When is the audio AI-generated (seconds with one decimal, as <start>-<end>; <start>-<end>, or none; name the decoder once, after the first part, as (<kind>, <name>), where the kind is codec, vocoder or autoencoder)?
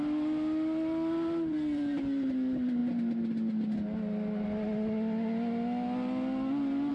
none